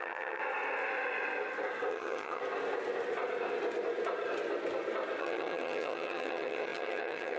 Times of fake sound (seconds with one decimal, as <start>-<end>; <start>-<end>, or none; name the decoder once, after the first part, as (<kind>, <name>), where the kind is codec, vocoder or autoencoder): 0.0-0.4 (vocoder, HiFi-GAN); 1.9-2.4; 5.2-7.4